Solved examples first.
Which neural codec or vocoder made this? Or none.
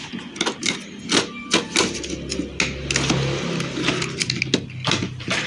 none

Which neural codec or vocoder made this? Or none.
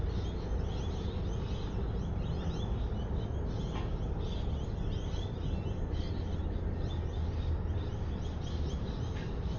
none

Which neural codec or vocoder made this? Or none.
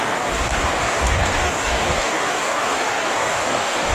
codec, DAC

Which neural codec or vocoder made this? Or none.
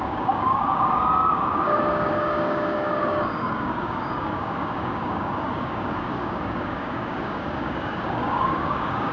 codec, DAC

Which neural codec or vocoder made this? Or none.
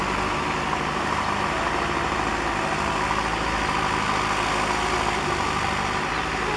none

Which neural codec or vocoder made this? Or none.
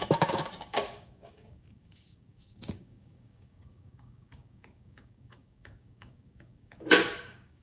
codec, DAC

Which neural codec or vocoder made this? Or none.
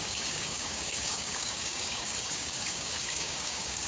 codec, DAC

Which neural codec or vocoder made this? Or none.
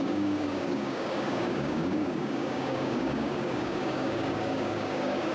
codec, DAC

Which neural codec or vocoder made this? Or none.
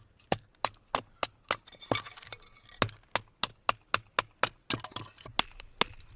none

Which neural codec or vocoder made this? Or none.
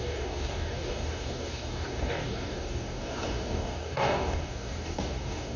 codec, DAC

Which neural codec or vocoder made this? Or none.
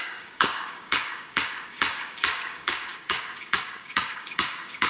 codec, DAC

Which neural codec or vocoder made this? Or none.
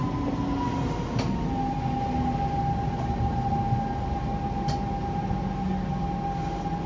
none